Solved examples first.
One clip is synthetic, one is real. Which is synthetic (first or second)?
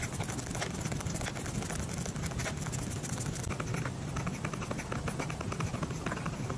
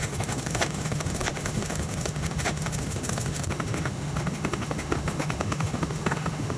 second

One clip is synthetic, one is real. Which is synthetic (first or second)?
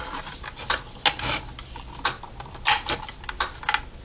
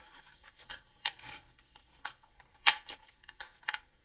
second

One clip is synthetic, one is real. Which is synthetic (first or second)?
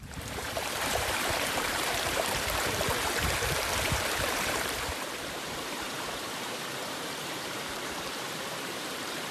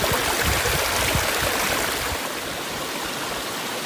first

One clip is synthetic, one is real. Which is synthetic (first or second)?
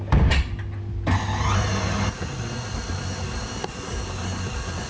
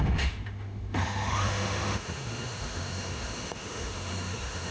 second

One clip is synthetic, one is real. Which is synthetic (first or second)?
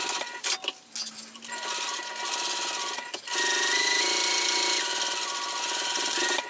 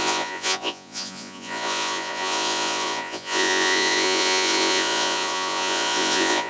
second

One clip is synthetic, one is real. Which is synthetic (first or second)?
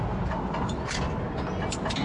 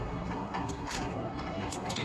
second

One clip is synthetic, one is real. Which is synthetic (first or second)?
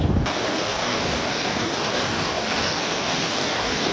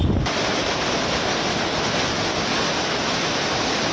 first